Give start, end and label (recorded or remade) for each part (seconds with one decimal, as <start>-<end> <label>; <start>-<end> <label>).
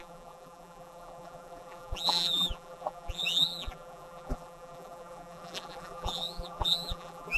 0.0-7.4 remade